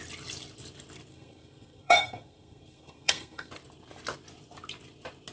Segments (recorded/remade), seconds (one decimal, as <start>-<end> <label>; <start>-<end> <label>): 0.0-1.1 recorded; 1.1-3.5 remade; 3.5-5.3 recorded

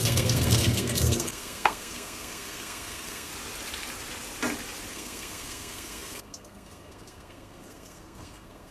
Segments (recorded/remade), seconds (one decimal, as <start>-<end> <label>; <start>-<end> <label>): 0.0-3.3 remade; 3.3-4.9 recorded; 4.9-8.7 remade

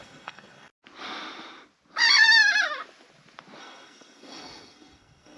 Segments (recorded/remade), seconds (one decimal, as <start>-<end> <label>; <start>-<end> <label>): 0.0-0.7 remade; 0.7-3.6 recorded; 3.6-5.4 remade

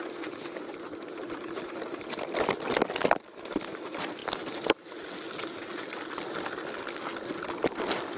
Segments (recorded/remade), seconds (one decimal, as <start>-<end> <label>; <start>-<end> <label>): 0.0-8.2 recorded